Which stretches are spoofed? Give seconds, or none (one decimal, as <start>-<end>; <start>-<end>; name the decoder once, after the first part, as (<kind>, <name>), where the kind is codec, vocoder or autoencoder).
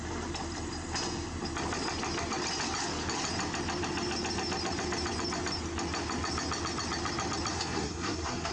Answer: 7.5-8.5 (codec, SNAC)